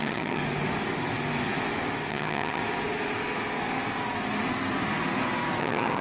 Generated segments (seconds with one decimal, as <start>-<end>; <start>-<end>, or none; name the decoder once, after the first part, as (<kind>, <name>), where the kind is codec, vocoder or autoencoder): 0.0-0.4 (vocoder, HiFi-GAN); 2.1-2.6; 5.6-6.0